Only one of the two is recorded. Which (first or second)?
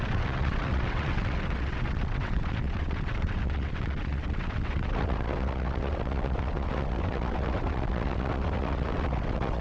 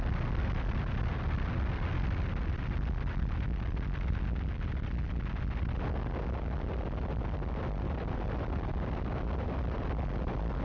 second